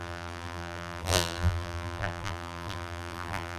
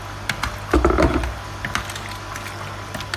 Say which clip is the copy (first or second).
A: first